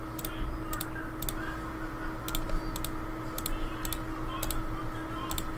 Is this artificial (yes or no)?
no